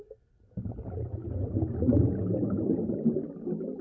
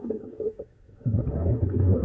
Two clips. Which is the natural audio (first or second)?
first